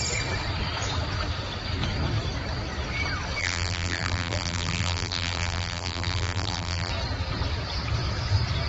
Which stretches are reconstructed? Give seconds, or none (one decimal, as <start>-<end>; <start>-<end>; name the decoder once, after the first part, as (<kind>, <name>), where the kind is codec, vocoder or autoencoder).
3.4-6.9 (vocoder, BigVGAN v2)